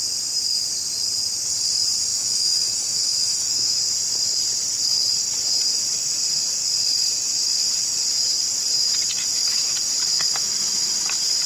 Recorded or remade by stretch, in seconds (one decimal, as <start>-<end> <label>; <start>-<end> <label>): 0.0-2.1 recorded; 2.1-3.8 remade; 3.8-11.5 recorded